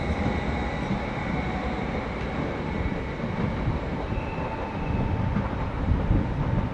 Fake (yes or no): no